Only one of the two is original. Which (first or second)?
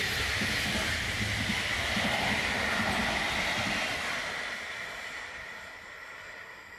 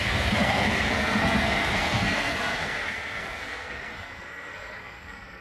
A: first